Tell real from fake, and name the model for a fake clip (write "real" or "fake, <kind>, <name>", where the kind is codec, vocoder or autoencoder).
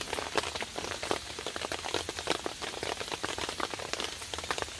real